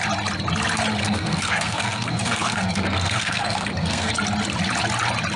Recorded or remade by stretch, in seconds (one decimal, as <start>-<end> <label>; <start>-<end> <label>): 0.0-1.0 recorded; 1.0-4.1 remade; 4.1-5.4 recorded